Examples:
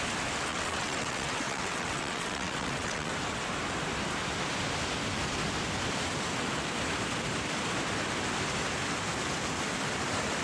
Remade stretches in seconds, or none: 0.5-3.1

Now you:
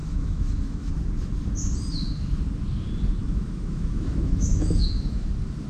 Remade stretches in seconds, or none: 0.0-0.9; 3.2-5.3

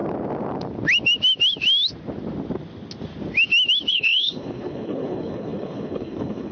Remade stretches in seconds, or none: 3.9-6.5

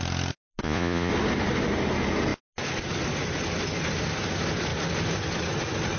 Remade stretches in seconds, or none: 0.6-1.1

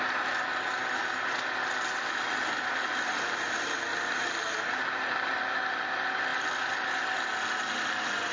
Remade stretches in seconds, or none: none

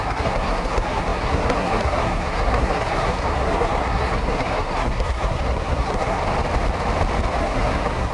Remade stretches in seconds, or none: 0.0-6.2; 7.4-8.1